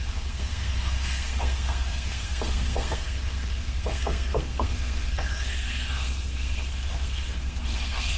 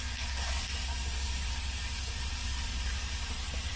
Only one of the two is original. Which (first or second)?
second